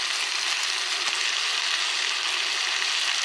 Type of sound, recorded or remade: recorded